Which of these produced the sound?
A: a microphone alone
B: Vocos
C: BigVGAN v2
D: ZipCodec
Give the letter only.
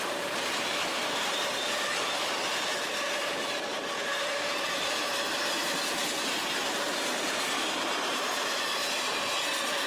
C